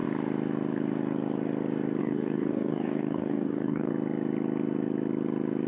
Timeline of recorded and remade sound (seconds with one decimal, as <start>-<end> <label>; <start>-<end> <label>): 0.0-2.0 recorded; 2.0-3.9 remade; 3.9-5.7 recorded